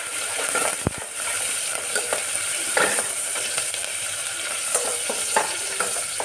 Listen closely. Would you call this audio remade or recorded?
remade